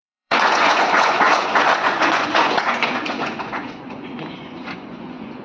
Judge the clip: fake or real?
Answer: fake